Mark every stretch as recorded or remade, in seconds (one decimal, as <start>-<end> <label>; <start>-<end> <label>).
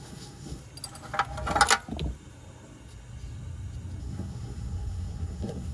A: 0.0-0.6 remade; 0.6-4.0 recorded; 4.0-5.7 remade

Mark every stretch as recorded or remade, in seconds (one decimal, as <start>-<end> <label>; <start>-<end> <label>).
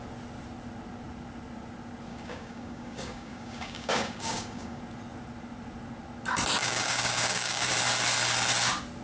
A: 0.0-2.1 recorded; 2.1-4.8 remade; 4.8-6.6 recorded; 6.6-7.7 remade; 7.7-9.0 recorded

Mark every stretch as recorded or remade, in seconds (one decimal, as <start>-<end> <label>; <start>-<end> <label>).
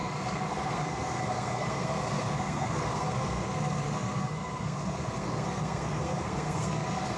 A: 0.0-7.2 remade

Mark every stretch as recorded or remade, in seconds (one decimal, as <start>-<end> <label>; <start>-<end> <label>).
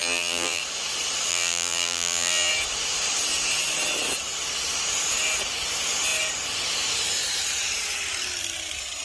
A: 0.0-0.6 remade; 0.6-1.3 recorded; 1.3-2.5 remade; 2.5-9.0 recorded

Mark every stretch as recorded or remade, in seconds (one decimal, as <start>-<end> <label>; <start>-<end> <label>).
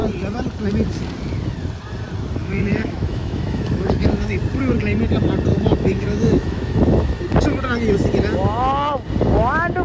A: 0.0-2.4 recorded; 2.4-4.4 remade; 4.4-5.5 recorded; 5.5-7.2 remade; 7.2-9.8 recorded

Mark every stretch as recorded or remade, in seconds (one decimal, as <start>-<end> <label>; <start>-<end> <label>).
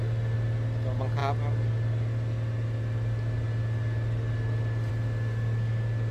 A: 0.0-6.1 recorded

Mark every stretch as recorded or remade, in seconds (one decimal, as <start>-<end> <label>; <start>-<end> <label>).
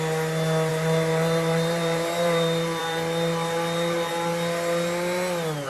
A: 0.0-0.7 recorded; 0.7-4.1 remade; 4.1-5.7 recorded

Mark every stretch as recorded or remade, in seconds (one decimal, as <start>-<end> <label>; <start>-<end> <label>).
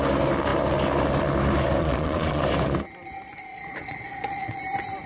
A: 0.0-1.8 recorded; 1.8-2.4 remade; 2.4-3.5 recorded; 3.5-4.6 remade; 4.6-5.1 recorded